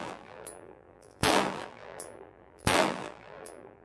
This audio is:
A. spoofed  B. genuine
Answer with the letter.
A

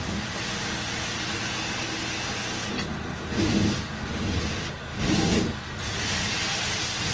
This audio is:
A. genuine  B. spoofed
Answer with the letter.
A